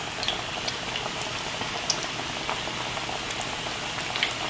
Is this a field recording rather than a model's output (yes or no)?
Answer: yes